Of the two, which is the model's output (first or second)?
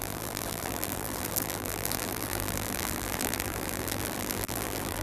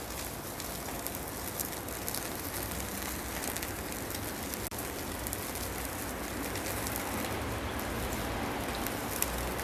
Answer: first